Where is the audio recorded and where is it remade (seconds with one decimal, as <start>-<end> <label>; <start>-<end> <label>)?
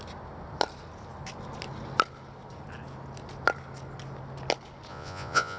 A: 0.0-4.9 recorded; 4.9-5.6 remade